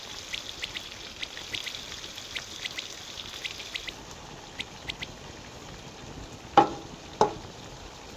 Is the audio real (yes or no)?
yes